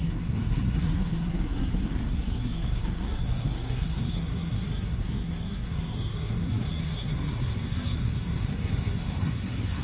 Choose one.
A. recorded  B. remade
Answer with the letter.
B